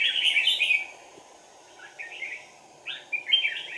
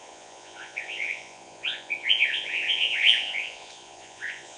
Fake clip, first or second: second